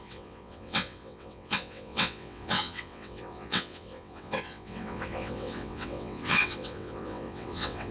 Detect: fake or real fake